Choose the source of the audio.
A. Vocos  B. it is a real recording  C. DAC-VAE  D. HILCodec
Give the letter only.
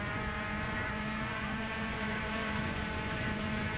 A